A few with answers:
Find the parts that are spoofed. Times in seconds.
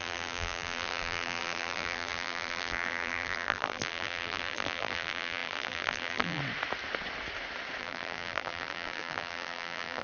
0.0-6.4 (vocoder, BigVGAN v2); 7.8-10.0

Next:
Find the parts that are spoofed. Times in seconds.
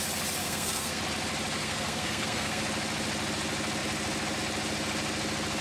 0.4-1.0 (codec, SNAC); 1.6-2.6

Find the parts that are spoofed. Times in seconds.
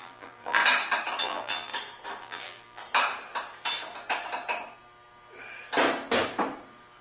0.0-0.6 (vocoder, BigVGAN v2); 1.2-1.7; 2.2-2.8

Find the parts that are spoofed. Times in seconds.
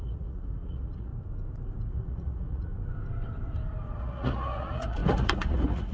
0.0-1.1 (vocoder, Vocos); 1.9-2.7; 4.0-5.9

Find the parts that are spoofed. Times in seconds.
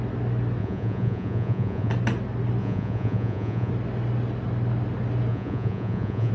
0.6-1.9 (vocoder, Vocos); 2.6-3.7; 5.3-6.3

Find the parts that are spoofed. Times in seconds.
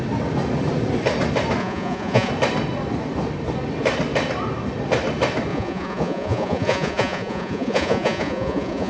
1.6-2.3 (vocoder, Vocos); 5.5-8.9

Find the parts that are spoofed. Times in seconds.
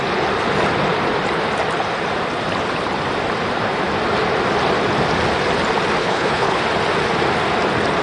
6.0-6.6 (codec, HILCodec)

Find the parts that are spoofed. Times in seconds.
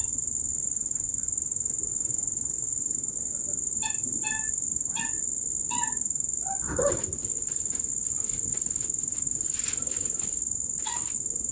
none